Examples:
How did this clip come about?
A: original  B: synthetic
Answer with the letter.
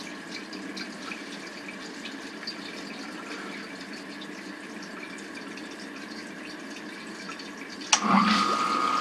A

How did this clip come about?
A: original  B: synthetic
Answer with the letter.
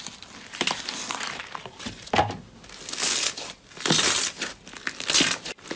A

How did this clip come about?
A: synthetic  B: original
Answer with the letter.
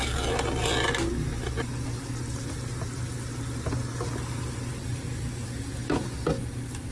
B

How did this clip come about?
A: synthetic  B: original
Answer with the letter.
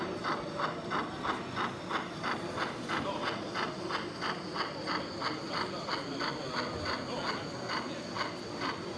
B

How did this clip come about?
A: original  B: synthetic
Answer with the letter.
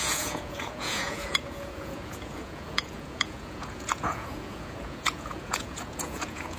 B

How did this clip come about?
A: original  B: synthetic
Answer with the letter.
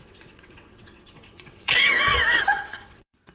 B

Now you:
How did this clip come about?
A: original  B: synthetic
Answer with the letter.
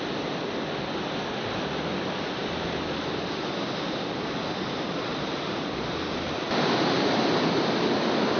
A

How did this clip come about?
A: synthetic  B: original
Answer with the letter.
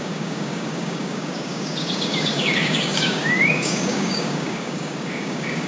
A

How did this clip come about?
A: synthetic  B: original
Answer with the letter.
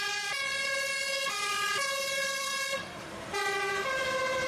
A